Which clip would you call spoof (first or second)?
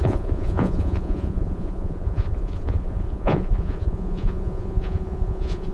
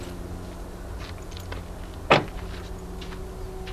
first